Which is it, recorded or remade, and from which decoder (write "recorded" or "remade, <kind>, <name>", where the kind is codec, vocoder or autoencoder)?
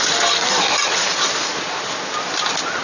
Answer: recorded